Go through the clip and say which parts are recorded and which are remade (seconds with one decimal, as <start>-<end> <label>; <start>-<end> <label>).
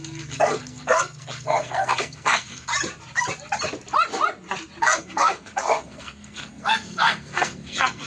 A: 0.0-2.7 remade; 2.7-4.8 recorded; 4.8-8.1 remade